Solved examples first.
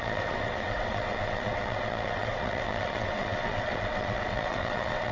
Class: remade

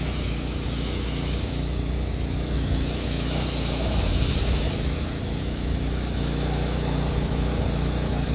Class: remade